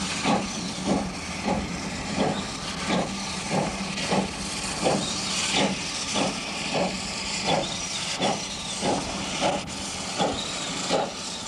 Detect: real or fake real